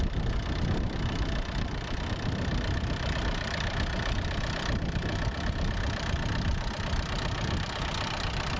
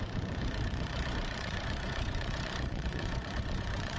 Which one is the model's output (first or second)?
second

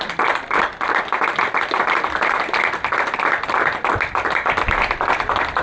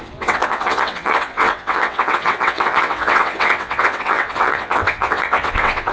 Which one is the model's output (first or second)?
second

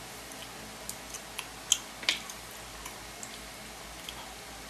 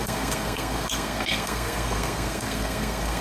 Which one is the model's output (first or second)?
second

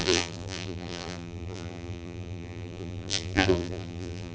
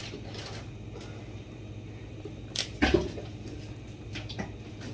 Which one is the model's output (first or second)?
first